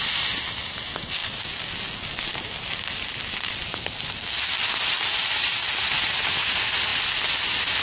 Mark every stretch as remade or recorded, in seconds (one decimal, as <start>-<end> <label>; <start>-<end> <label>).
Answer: 0.0-7.8 recorded